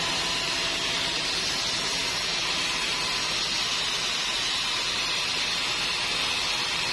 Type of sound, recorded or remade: recorded